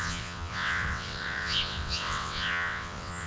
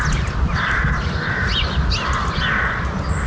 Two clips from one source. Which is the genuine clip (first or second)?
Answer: second